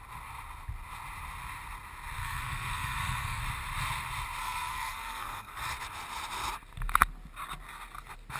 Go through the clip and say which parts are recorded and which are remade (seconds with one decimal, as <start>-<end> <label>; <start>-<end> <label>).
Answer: 0.0-2.2 recorded; 2.2-3.4 remade; 3.4-4.4 recorded; 4.4-5.7 remade; 5.7-8.4 recorded